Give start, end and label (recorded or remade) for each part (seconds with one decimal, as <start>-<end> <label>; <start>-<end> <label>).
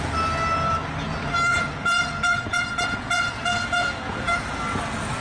0.0-1.5 recorded; 1.5-4.6 remade; 4.6-5.2 recorded